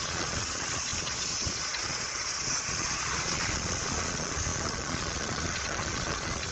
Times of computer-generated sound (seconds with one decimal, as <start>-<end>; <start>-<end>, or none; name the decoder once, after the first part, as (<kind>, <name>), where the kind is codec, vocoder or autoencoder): 0.0-6.5 (vocoder, Vocos)